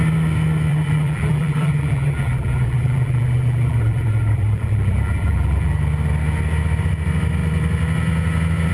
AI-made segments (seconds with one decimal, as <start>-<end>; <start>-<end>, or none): 0.7-5.8